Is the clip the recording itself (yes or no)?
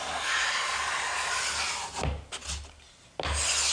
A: yes